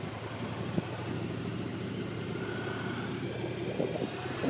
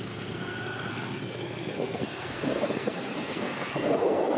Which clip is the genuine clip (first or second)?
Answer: first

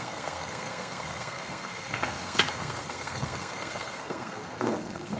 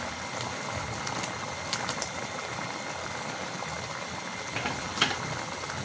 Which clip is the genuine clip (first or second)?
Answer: second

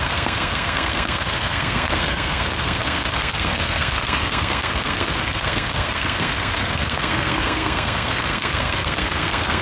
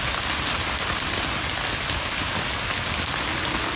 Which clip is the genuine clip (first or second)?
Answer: second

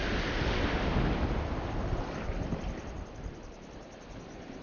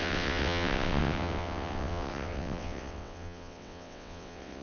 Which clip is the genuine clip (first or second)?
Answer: first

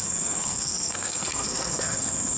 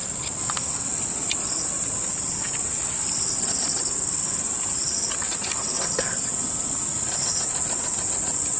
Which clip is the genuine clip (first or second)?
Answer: second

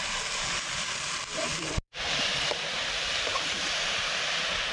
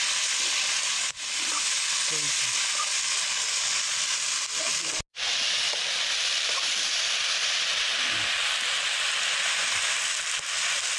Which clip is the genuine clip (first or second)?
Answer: second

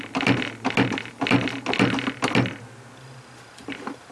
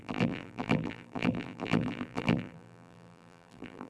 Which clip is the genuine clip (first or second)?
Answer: first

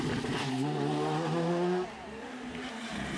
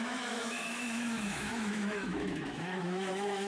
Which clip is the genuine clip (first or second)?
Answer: first